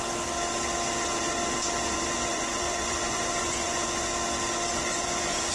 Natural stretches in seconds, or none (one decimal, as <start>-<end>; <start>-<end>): 0.0-2.3; 4.1-4.7